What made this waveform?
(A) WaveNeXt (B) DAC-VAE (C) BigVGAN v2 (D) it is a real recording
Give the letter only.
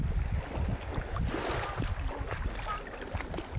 D